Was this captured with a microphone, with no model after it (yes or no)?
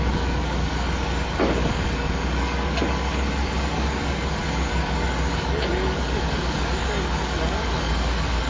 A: no